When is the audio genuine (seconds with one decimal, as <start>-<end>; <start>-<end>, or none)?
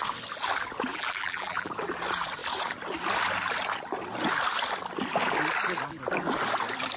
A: 0.0-0.9; 1.7-7.0